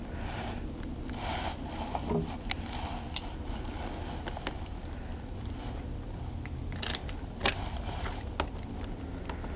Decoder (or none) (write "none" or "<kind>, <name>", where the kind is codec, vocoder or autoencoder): none